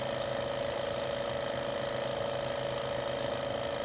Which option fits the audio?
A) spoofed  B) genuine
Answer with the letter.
B